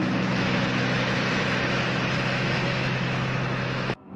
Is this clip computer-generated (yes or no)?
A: yes